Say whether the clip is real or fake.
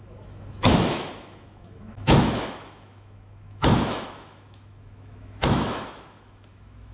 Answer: fake